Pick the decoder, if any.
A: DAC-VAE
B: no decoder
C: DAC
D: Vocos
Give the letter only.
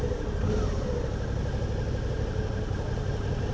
B